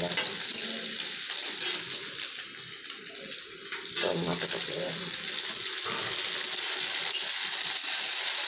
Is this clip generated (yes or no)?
no